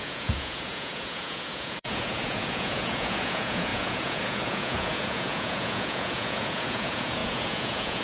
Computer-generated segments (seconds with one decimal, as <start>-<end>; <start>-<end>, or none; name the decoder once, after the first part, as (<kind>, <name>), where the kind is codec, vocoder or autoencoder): 0.0-8.0 (vocoder, Vocos)